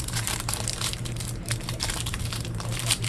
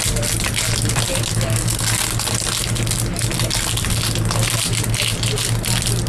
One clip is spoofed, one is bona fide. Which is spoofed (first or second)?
first